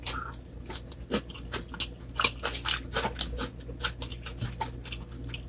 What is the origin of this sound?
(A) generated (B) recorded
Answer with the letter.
B